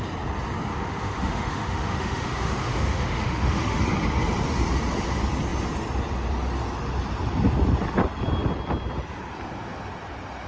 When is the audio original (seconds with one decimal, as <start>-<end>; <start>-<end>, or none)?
0.0-0.7; 3.8-10.5